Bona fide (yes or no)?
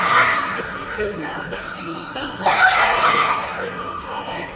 no